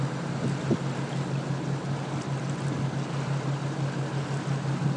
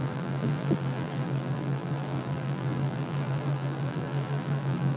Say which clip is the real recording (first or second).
first